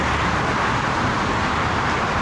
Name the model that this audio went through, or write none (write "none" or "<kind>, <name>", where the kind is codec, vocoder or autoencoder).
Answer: none